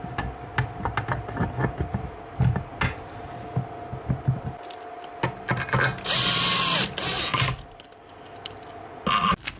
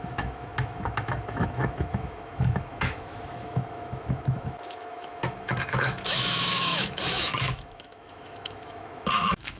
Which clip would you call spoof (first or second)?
second